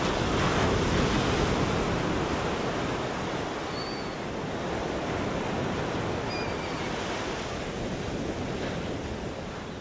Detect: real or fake real